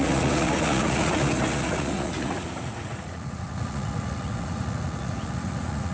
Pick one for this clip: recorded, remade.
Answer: remade